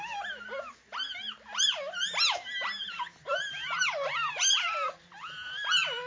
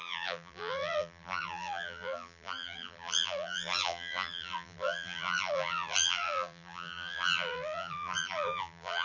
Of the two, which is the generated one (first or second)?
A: second